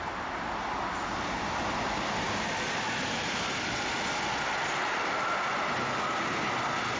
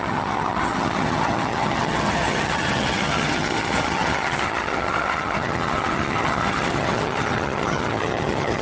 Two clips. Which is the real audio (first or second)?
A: first